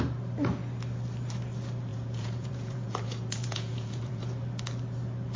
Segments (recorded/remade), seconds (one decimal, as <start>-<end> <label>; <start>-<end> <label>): 0.0-1.9 recorded; 1.9-4.2 remade; 4.2-5.4 recorded